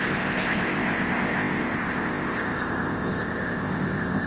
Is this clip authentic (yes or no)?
no